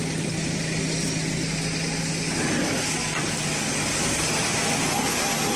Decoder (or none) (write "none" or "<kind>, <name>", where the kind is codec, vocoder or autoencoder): none